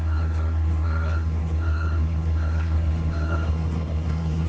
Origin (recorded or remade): remade